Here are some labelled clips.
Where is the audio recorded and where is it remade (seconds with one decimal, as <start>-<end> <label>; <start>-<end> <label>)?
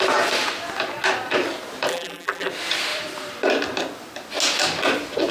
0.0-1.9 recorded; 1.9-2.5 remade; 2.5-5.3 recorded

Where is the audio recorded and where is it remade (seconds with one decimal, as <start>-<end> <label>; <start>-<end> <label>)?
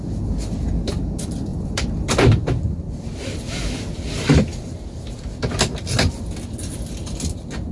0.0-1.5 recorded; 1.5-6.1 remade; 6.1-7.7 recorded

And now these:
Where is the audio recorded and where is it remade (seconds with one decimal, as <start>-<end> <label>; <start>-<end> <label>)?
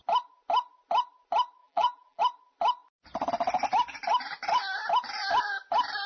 0.0-1.6 recorded; 1.6-2.2 remade; 2.2-6.1 recorded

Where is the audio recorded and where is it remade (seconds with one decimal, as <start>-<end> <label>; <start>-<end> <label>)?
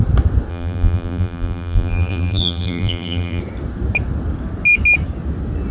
0.0-0.5 recorded; 0.5-3.4 remade; 3.4-5.7 recorded